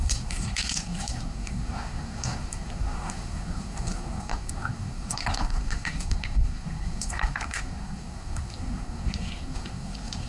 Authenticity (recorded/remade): remade